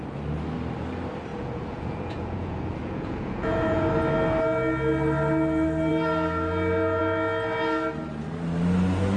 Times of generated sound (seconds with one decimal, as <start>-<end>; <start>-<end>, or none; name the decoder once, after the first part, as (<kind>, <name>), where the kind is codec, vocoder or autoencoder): 1.3-3.9 (vocoder, Vocos)